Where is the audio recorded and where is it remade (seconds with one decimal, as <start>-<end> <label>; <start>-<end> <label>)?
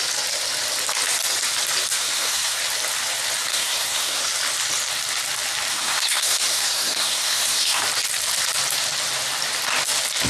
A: 0.0-2.0 recorded; 2.0-2.6 remade; 2.6-3.5 recorded; 3.5-4.2 remade; 4.2-5.7 recorded; 5.7-7.8 remade; 7.8-10.3 recorded